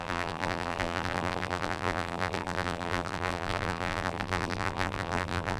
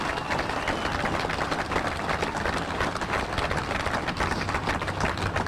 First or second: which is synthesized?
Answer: first